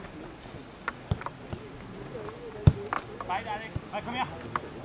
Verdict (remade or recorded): recorded